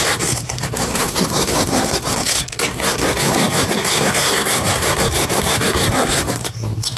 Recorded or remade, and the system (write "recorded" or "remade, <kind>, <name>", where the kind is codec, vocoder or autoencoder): remade, codec, SNAC